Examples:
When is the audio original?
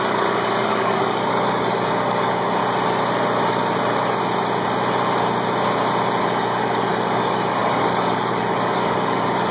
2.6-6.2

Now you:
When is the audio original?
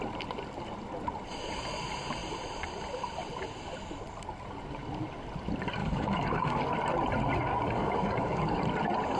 0.0-5.8; 6.6-7.5; 8.6-9.2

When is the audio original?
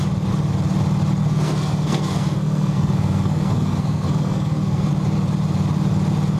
0.0-1.2; 4.9-6.4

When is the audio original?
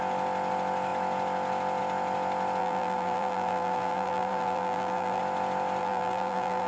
0.0-2.6; 5.2-5.8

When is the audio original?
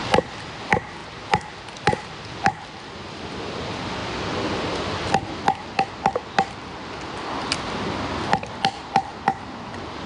0.0-10.1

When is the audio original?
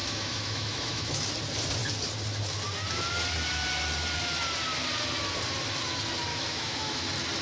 1.2-6.3; 7.0-7.4